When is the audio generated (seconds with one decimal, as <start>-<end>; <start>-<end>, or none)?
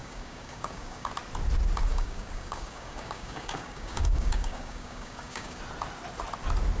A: 0.0-1.1; 1.9-5.6